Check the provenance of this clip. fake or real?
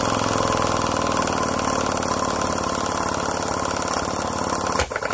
real